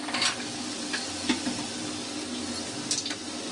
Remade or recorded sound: recorded